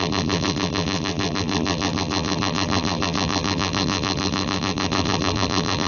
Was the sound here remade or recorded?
remade